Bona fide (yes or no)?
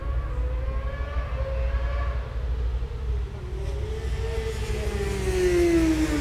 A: yes